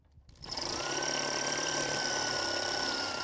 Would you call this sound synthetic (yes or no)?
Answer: yes